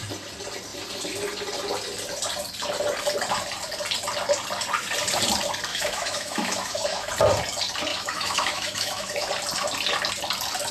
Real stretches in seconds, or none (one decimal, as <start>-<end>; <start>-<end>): 0.0-5.7; 7.1-7.9; 9.3-10.7